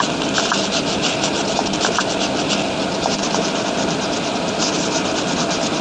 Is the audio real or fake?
real